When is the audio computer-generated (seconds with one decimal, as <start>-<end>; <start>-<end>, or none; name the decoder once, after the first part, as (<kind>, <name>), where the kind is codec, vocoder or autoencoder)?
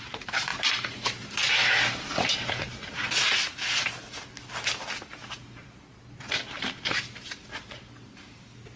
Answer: 0.0-2.7 (vocoder, BigVGAN v2); 7.0-8.8